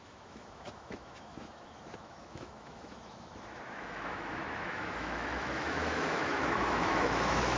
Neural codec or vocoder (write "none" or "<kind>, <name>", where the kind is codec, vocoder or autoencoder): autoencoder, DAC-VAE